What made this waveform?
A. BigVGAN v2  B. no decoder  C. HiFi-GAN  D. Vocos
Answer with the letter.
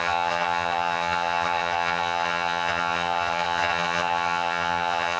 C